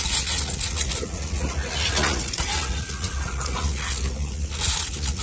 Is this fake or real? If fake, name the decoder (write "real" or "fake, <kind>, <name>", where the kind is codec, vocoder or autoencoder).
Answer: fake, vocoder, Vocos